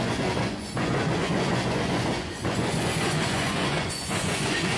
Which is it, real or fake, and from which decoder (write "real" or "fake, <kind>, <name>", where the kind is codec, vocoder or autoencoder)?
fake, vocoder, Vocos